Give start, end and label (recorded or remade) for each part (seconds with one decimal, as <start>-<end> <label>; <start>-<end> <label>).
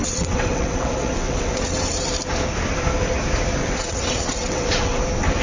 0.0-1.9 remade; 1.9-3.6 recorded; 3.6-5.0 remade; 5.0-5.4 recorded